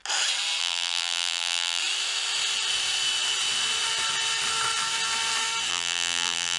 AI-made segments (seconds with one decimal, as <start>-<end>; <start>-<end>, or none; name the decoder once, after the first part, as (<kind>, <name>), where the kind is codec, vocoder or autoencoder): 0.6-1.8 (vocoder, BigVGAN v2); 5.7-6.6